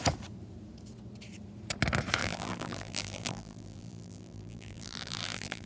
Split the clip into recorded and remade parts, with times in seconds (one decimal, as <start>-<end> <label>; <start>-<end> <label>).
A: 0.0-2.2 recorded; 2.2-5.7 remade

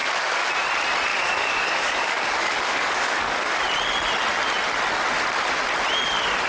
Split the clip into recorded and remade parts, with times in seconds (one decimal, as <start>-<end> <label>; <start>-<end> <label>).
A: 0.0-0.5 remade; 0.5-1.1 recorded; 1.1-3.6 remade; 3.6-6.5 recorded

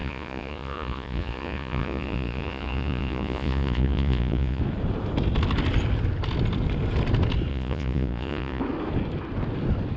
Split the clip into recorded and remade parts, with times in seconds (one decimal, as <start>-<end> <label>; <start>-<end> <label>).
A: 0.0-4.6 remade; 4.6-7.5 recorded; 7.5-8.6 remade; 8.6-10.0 recorded

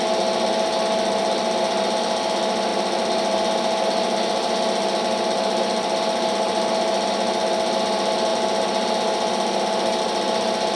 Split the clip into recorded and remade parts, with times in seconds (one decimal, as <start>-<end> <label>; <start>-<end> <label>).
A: 0.0-10.8 recorded

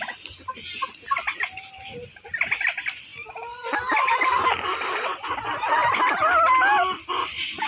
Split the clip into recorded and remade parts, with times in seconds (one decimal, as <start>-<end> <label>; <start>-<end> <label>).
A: 0.0-7.7 recorded

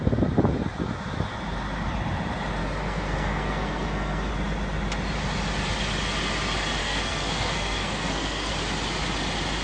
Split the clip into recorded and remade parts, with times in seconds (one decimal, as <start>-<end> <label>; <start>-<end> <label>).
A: 0.0-2.6 recorded; 2.6-4.3 remade; 4.3-6.8 recorded; 6.8-8.5 remade; 8.5-9.6 recorded

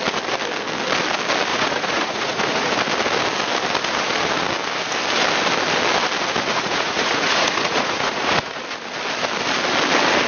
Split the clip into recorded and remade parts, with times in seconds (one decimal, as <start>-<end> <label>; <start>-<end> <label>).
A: 0.0-1.5 recorded; 1.5-2.7 remade; 2.7-6.5 recorded; 6.5-8.6 remade; 8.6-10.3 recorded